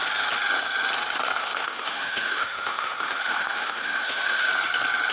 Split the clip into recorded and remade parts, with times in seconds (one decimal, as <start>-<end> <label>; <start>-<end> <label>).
0.0-1.4 recorded; 1.4-4.5 remade; 4.5-5.1 recorded